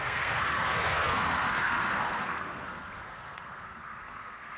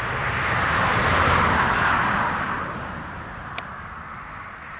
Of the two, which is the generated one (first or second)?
first